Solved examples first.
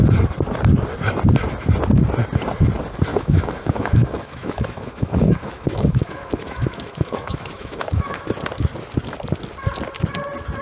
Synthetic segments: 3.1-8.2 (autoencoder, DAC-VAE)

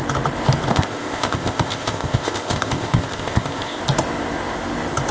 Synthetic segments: 0.7-3.8 (codec, ZipCodec)

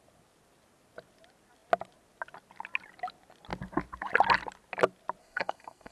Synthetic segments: 5.2-5.9 (codec, SNAC)

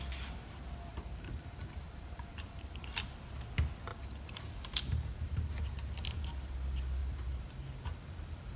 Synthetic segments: 0.9-2.7 (vocoder, BigVGAN v2); 3.9-5.5; 7.0-8.6